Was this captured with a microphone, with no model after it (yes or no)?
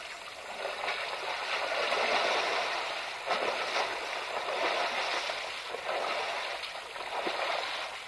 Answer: yes